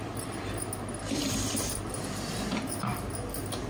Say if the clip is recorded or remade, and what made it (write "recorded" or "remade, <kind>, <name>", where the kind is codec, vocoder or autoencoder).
recorded